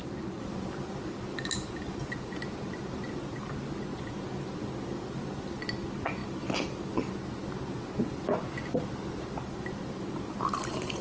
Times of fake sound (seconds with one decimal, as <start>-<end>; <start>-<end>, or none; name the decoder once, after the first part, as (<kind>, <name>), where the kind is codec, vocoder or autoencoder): none